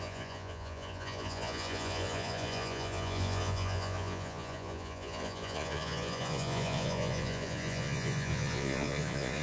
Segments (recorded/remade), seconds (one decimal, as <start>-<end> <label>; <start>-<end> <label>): 0.0-9.4 remade

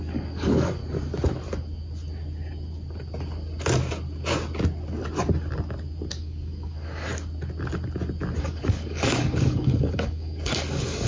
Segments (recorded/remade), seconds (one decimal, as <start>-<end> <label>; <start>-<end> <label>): 0.0-0.8 remade; 0.8-6.1 recorded; 6.1-7.1 remade; 7.1-8.4 recorded; 8.4-11.1 remade

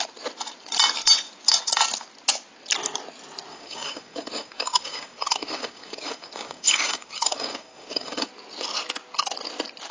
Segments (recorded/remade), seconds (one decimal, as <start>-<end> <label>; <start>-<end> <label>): 0.0-3.5 recorded; 3.5-8.3 remade; 8.3-9.9 recorded

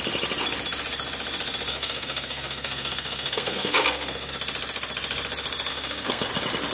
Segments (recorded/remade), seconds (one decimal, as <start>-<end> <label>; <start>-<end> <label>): 0.0-1.7 recorded; 1.7-4.3 remade; 4.3-5.7 recorded; 5.7-6.3 remade; 6.3-6.7 recorded